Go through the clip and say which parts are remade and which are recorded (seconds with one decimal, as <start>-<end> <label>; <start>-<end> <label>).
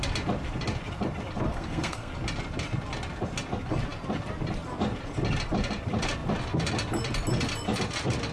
0.0-1.5 recorded; 1.5-2.1 remade; 2.1-8.3 recorded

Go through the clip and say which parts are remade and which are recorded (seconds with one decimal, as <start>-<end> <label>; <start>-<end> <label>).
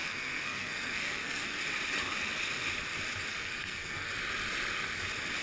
0.0-1.6 remade; 1.6-3.3 recorded; 3.3-4.1 remade; 4.1-5.4 recorded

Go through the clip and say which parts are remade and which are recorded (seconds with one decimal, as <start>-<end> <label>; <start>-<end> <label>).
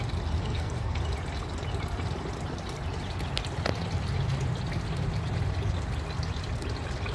0.0-0.4 recorded; 0.4-1.0 remade; 1.0-7.1 recorded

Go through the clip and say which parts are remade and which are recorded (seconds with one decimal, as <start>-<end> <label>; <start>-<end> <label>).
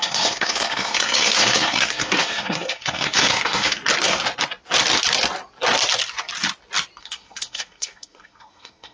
0.0-3.8 remade; 3.8-7.0 recorded; 7.0-8.9 remade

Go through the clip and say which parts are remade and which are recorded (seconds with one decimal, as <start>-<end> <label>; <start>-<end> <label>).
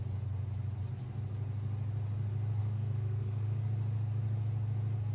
0.0-2.6 recorded; 2.6-3.6 remade; 3.6-5.1 recorded